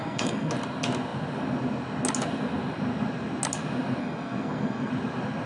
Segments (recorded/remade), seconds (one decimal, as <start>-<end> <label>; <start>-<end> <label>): 0.0-0.5 remade; 0.5-4.0 recorded; 4.0-4.9 remade; 4.9-5.5 recorded